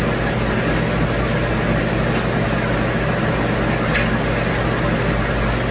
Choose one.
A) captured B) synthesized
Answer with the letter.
A